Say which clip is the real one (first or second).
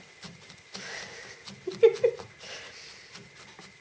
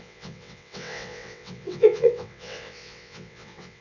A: first